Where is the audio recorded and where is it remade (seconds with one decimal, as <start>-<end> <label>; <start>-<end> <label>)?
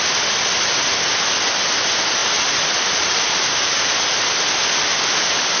0.0-2.2 recorded; 2.2-3.8 remade; 3.8-5.6 recorded